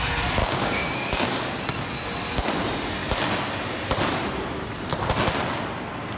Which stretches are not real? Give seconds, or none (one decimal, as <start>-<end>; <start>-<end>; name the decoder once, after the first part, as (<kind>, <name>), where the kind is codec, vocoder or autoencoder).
0.4-1.5 (codec, DAC)